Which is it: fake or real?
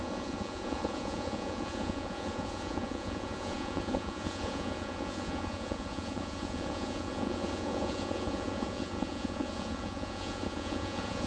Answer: fake